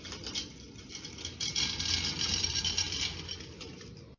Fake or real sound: real